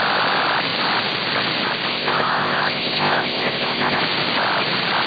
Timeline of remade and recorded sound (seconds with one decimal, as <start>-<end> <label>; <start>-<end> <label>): 0.0-1.9 recorded; 1.9-4.0 remade; 4.0-5.1 recorded